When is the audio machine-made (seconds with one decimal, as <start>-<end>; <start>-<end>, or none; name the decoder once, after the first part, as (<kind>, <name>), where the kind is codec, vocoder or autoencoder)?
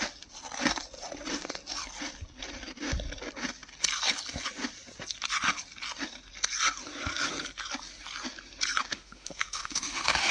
8.9-10.3 (autoencoder, DAC-VAE)